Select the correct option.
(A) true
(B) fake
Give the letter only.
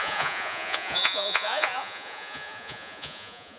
B